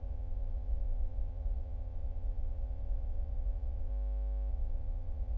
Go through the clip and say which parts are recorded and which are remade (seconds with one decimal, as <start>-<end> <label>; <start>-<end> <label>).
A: 0.0-3.9 remade; 3.9-4.5 recorded; 4.5-5.4 remade

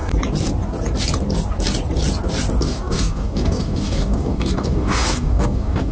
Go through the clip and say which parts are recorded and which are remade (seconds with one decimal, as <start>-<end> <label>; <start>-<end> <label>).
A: 0.0-2.6 recorded; 2.6-5.9 remade